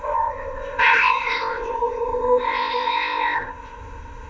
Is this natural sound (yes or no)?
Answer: no